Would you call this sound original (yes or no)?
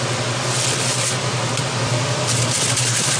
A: yes